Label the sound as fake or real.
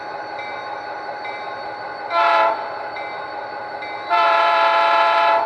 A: fake